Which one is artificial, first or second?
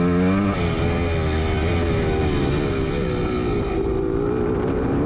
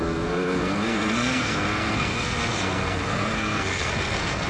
second